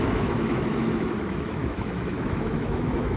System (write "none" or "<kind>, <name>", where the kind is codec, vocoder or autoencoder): autoencoder, DAC-VAE